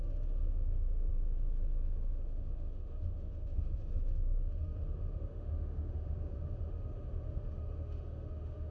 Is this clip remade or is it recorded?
remade